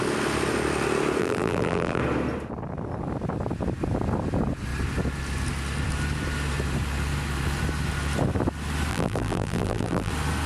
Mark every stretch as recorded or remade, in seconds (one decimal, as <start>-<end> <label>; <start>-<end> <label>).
0.0-1.2 recorded; 1.2-2.0 remade; 2.0-8.9 recorded; 8.9-10.1 remade; 10.1-10.5 recorded